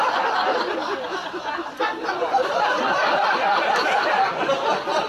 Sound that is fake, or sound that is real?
real